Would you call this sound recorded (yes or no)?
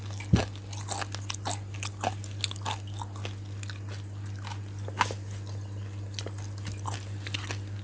yes